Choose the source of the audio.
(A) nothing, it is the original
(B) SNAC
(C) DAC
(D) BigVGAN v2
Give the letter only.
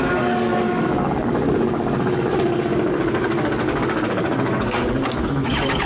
C